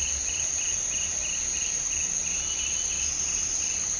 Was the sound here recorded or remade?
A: recorded